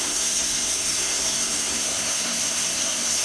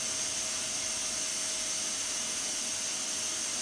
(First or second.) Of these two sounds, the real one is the second